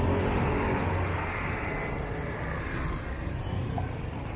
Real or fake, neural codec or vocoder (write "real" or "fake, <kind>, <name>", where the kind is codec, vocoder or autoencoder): real